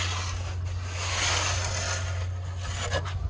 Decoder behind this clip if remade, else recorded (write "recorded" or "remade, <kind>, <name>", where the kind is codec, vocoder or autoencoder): recorded